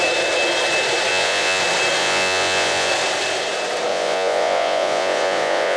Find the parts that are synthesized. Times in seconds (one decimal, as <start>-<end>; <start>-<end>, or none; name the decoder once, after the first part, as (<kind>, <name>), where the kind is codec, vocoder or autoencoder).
1.1-1.6 (vocoder, Vocos); 2.0-2.9; 3.9-5.8